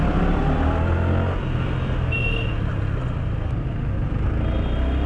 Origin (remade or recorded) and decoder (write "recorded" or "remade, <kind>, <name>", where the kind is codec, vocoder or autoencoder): recorded